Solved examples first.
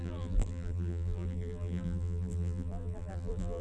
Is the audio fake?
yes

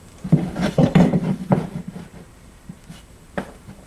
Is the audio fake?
yes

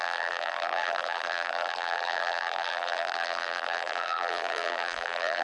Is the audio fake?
yes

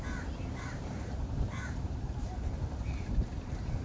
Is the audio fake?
yes